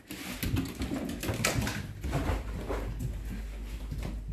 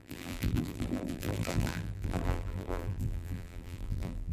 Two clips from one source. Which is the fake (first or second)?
second